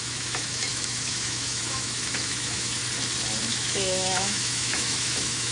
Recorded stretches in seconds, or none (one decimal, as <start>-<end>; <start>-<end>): 2.8-3.4